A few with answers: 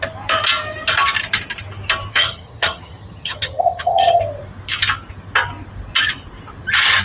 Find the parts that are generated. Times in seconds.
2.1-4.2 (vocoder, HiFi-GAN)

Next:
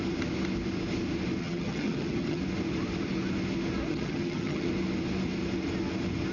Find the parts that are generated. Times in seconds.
1.4-2.4 (vocoder, HiFi-GAN); 3.9-4.7